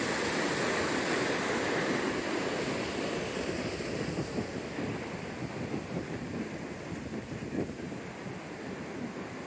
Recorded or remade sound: recorded